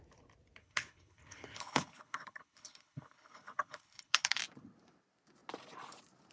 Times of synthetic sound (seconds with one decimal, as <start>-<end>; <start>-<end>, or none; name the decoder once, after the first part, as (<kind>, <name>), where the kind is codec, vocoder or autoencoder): 0.6-4.4 (codec, HILCodec)